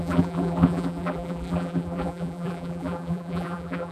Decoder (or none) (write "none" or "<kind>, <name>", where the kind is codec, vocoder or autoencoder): vocoder, BigVGAN v2